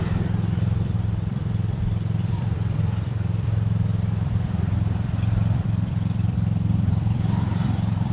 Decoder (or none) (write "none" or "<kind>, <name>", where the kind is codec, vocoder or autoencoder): vocoder, BigVGAN v2